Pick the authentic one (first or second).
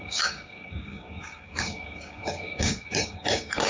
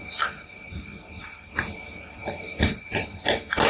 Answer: second